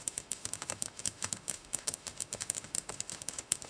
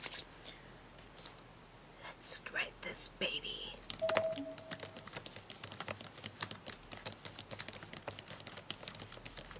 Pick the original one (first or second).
second